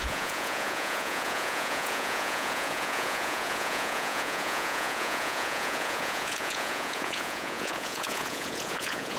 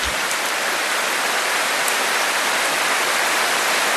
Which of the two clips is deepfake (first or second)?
first